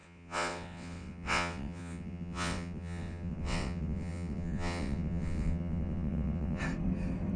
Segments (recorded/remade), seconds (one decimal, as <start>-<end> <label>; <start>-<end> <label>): 0.0-6.6 remade; 6.6-7.4 recorded